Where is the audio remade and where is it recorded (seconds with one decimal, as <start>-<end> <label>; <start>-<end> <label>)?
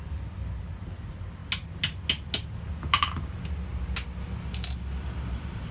0.0-5.7 recorded